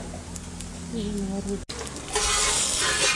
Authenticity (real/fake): real